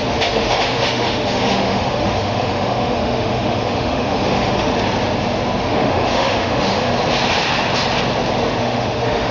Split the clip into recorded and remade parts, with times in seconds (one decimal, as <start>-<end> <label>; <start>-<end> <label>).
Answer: 0.0-4.7 remade; 4.7-5.6 recorded; 5.6-6.9 remade; 6.9-8.6 recorded; 8.6-9.3 remade